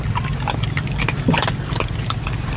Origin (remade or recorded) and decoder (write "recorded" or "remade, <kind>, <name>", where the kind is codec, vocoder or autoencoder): recorded